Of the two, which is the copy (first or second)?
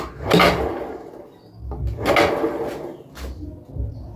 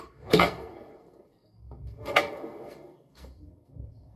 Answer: second